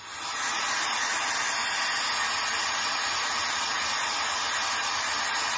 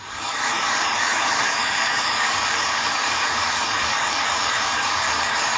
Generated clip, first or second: second